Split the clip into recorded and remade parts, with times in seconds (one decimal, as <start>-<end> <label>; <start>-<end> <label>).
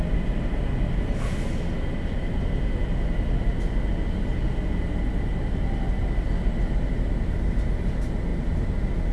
0.0-9.1 recorded